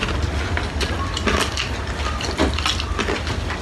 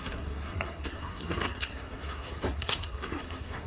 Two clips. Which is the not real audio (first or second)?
second